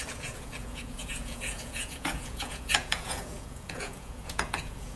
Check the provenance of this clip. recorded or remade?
remade